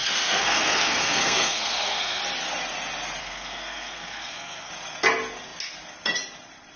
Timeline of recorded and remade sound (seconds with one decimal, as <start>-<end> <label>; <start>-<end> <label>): 0.0-2.2 remade; 2.2-3.2 recorded; 3.2-4.7 remade; 4.7-6.8 recorded